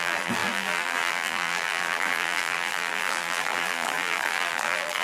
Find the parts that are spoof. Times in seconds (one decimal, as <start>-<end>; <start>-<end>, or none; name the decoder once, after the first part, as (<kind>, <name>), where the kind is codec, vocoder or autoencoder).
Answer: 0.0-5.0 (vocoder, BigVGAN v2)

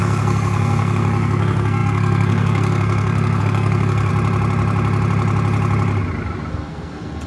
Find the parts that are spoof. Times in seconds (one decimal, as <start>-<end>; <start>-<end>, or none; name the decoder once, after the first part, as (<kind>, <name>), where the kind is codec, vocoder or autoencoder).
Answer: 0.0-4.1 (codec, SNAC); 6.5-7.3